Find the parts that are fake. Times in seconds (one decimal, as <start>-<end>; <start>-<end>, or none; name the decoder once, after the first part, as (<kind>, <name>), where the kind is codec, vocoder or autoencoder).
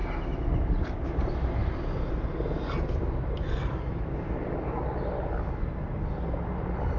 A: none